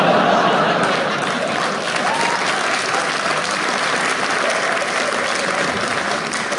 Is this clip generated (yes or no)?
no